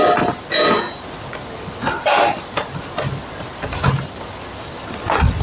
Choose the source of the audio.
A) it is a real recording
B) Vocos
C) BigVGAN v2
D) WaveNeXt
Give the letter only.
A